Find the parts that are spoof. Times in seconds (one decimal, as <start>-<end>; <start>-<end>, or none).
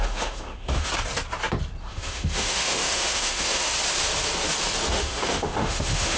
0.0-0.9; 1.8-3.7; 4.9-6.2